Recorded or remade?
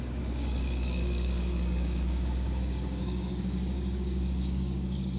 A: remade